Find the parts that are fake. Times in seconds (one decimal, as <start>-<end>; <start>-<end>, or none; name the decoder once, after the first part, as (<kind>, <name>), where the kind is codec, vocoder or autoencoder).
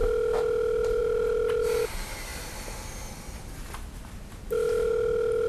none